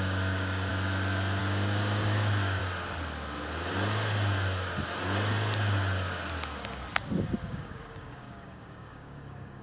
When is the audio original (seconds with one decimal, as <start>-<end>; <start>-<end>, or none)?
0.7-1.4; 2.6-7.4